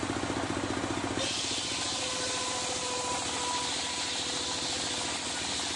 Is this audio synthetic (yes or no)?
no